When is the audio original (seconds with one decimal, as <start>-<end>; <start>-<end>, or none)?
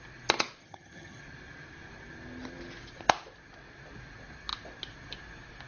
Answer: 0.0-0.6; 1.2-5.7